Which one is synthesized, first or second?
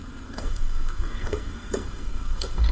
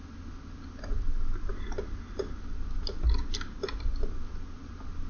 first